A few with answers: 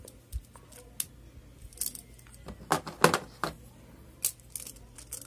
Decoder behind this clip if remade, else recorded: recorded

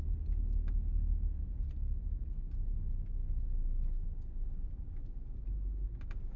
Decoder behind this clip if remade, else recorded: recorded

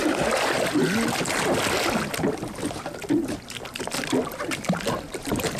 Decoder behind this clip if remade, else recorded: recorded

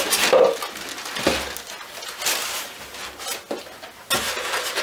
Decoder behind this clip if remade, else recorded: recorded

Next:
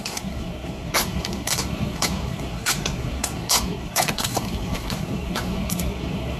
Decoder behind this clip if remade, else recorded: remade, codec, SNAC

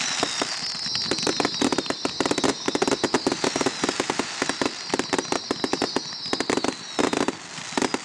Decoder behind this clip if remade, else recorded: recorded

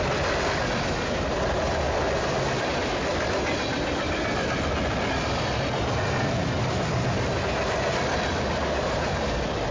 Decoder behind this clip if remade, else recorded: recorded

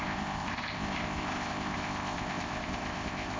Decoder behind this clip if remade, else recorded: remade, codec, ZipCodec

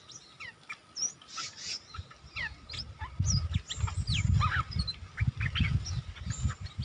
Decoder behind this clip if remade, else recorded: recorded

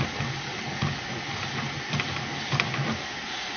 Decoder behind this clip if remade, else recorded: recorded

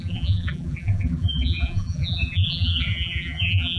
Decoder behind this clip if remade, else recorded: remade, vocoder, BigVGAN v2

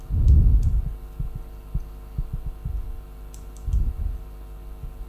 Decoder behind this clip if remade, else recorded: recorded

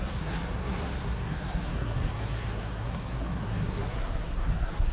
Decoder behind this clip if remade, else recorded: remade, codec, SNAC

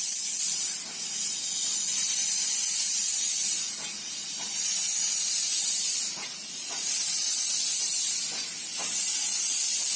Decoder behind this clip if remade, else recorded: recorded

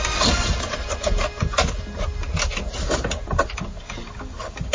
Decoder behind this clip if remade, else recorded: recorded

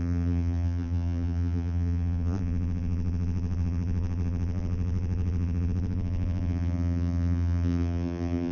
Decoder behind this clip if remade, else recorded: remade, vocoder, BigVGAN v2